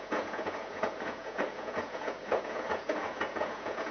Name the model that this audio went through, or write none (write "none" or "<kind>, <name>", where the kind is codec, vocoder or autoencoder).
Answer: vocoder, Vocos